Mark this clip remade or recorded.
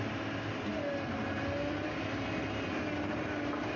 recorded